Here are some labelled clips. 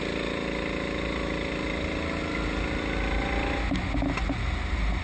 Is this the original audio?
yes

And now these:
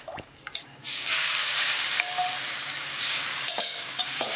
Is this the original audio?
no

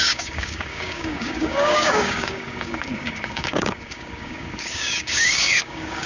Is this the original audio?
no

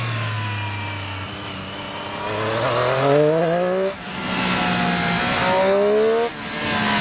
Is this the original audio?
yes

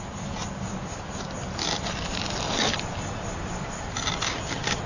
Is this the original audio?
yes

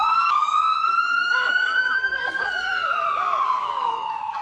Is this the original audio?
no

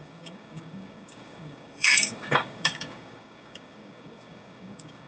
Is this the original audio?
no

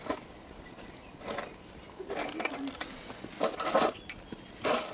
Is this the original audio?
yes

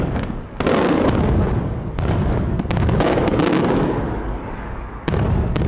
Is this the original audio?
no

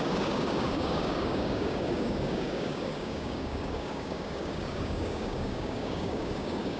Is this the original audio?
no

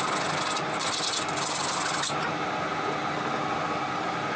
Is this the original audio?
yes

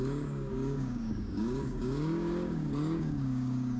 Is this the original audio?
no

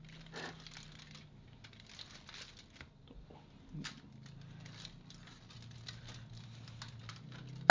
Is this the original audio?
yes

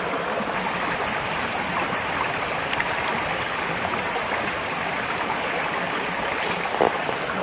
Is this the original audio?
yes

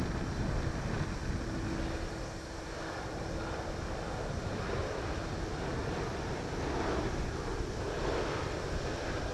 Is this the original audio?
yes